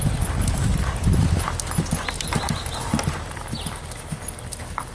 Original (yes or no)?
yes